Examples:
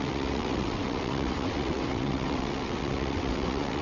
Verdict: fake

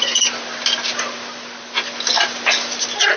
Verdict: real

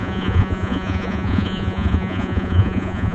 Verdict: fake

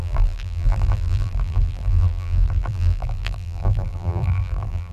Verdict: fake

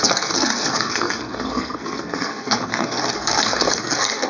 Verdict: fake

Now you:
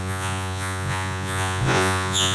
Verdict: fake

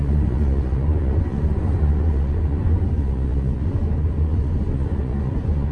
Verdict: fake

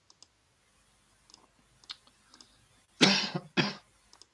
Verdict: real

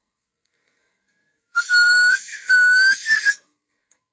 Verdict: fake